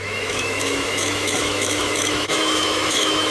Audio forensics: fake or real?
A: fake